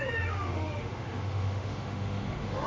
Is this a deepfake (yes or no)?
yes